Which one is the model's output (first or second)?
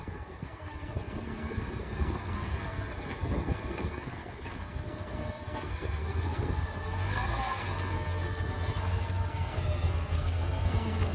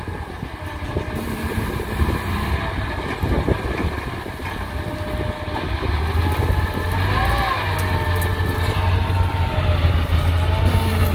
first